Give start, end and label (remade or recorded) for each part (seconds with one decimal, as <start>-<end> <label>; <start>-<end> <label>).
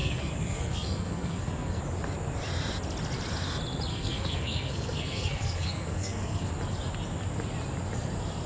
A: 0.0-1.8 remade; 1.8-3.9 recorded; 3.9-6.5 remade; 6.5-8.5 recorded